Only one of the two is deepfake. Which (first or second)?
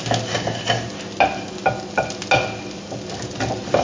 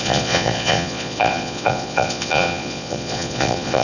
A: second